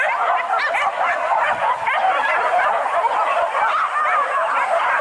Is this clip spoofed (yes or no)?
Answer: no